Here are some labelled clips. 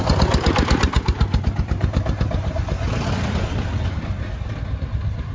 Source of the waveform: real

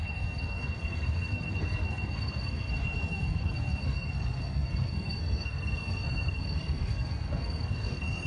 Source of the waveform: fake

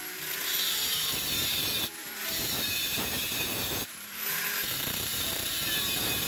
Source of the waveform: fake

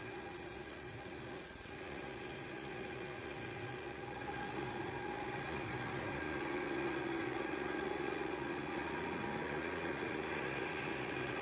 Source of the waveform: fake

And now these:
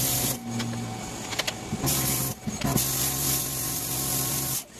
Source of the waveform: real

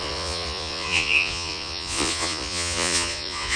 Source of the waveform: fake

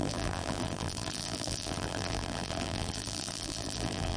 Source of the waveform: fake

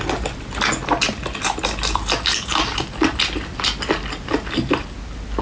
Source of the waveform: real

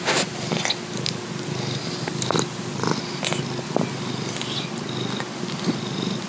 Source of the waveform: real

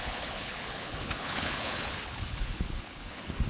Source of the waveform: fake